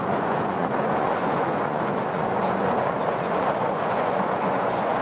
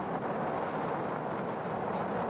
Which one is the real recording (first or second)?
second